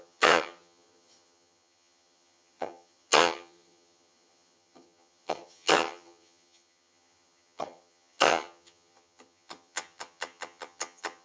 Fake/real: fake